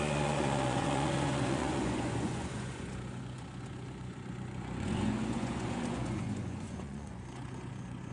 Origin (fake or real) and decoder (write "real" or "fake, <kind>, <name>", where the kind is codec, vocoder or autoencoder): fake, vocoder, Vocos